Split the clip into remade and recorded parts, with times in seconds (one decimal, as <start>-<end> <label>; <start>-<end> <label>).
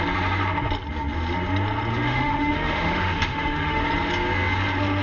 0.0-1.9 recorded; 1.9-3.8 remade; 3.8-5.0 recorded